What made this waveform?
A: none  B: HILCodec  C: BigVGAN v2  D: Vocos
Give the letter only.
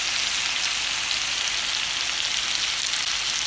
A